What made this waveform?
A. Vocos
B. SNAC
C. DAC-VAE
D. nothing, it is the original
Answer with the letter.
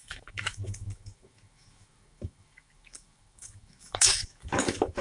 C